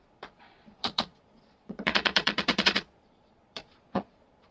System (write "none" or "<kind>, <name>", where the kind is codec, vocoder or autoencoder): vocoder, Vocos